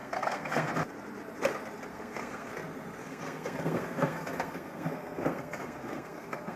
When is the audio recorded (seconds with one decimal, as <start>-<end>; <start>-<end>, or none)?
0.7-1.9; 2.5-3.0